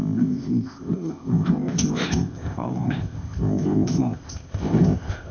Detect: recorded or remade remade